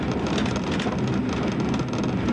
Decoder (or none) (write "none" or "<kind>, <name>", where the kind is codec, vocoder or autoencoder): none